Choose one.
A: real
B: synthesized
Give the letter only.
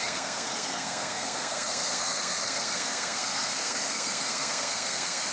B